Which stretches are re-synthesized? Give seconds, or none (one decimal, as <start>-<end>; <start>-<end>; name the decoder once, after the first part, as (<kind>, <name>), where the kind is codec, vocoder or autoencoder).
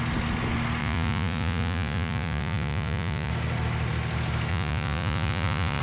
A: 0.8-3.3 (vocoder, Vocos); 4.5-5.8